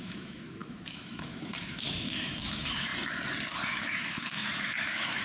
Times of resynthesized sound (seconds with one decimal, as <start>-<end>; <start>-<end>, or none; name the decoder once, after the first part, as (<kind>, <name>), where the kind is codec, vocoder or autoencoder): 0.0-2.9 (autoencoder, DAC-VAE); 3.8-5.2